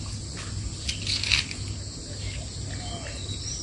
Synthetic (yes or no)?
no